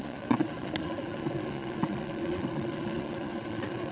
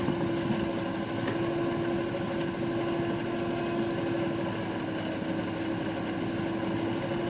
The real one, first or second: second